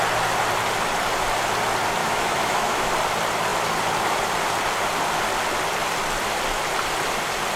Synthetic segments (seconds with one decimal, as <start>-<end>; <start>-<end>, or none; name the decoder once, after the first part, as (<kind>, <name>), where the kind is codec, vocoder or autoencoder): 2.0-2.9 (autoencoder, DAC-VAE)